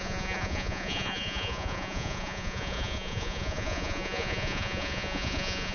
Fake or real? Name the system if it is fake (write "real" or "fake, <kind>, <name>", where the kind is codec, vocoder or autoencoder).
fake, vocoder, Vocos